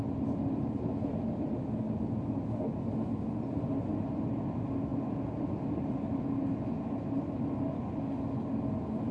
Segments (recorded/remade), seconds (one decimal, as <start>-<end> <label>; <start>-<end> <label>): 0.0-9.1 recorded